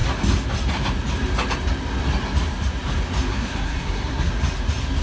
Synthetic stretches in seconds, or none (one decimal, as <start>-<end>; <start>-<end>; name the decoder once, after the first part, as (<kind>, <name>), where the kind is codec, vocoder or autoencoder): 3.3-4.3 (codec, SNAC)